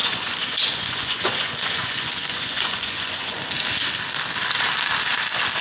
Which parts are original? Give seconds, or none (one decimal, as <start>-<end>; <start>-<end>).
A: 3.4-5.6